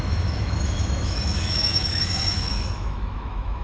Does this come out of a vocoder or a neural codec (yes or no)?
yes